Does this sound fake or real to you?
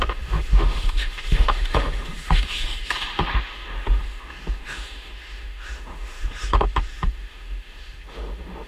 fake